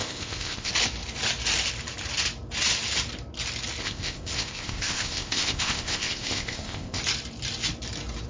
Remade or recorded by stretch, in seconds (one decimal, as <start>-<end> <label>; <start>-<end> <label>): 0.0-0.7 remade; 0.7-3.8 recorded; 3.8-7.0 remade; 7.0-8.3 recorded